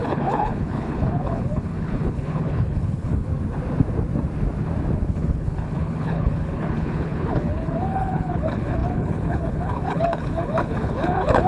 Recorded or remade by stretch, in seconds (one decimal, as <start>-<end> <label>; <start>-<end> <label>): 0.0-3.3 remade; 3.3-5.1 recorded; 5.1-11.5 remade